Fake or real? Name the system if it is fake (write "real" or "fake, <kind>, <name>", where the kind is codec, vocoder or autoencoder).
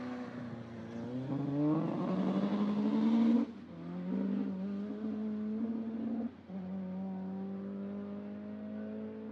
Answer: real